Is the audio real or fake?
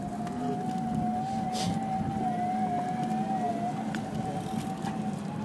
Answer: real